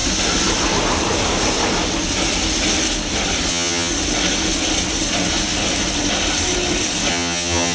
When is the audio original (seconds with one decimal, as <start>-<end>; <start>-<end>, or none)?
0.0-3.5; 3.9-7.1